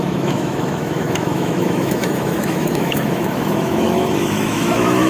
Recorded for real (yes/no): no